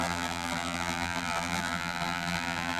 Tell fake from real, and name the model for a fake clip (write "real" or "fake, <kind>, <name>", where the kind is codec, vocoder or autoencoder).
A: fake, vocoder, BigVGAN v2